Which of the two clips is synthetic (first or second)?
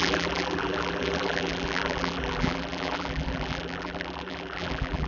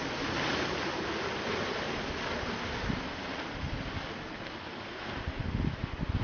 first